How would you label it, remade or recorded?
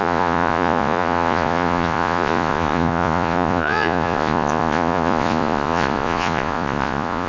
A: remade